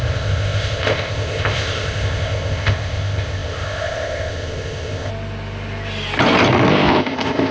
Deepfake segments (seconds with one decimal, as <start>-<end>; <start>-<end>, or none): 0.0-5.1; 6.7-7.5